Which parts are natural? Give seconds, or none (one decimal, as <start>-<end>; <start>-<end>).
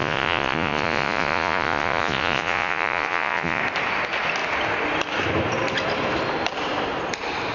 3.6-7.5